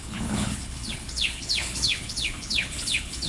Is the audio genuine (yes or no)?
no